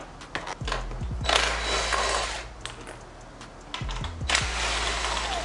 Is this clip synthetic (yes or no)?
no